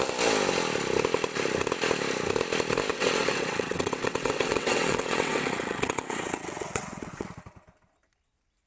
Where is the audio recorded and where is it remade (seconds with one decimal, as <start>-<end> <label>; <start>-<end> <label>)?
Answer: 0.0-2.9 recorded; 2.9-7.3 remade; 7.3-8.7 recorded